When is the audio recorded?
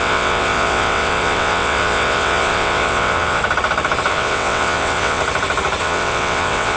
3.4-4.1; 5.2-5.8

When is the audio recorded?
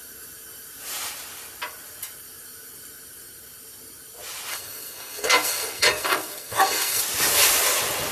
0.0-4.5; 7.0-8.1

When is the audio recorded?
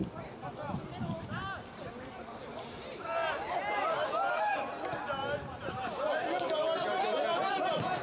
0.0-8.0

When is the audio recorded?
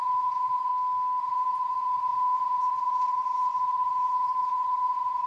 0.7-1.2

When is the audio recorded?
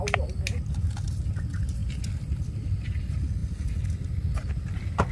0.0-1.8; 3.0-3.4; 4.5-5.1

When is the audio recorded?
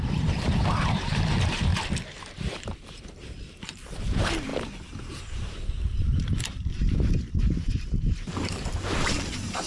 1.7-2.3; 4.5-5.0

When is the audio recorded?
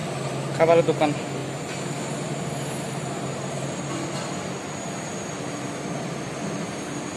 0.0-7.2